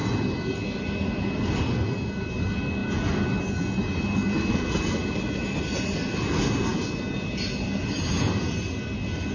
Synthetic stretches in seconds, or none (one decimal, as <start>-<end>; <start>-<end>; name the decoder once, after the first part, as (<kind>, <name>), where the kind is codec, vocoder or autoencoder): 5.0-5.6 (vocoder, BigVGAN v2)

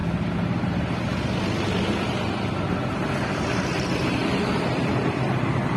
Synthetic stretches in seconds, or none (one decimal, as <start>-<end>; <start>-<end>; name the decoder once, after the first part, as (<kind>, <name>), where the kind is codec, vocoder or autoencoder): 2.9-5.8 (vocoder, BigVGAN v2)

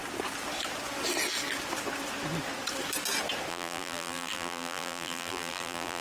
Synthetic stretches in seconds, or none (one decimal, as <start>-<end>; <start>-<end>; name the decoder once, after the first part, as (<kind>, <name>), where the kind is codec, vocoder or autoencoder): 3.5-6.0 (vocoder, BigVGAN v2)

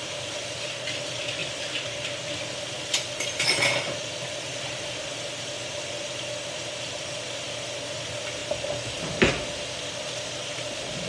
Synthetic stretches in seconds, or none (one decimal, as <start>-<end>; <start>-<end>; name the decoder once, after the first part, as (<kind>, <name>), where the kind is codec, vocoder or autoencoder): none